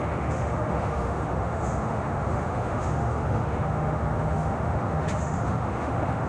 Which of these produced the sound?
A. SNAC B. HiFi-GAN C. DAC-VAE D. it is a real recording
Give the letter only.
C